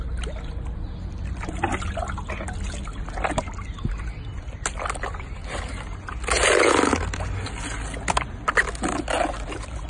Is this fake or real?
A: real